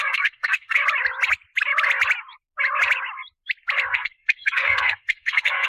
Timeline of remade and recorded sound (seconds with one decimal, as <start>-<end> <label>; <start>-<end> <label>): 0.0-0.8 remade; 0.8-3.9 recorded; 3.9-5.7 remade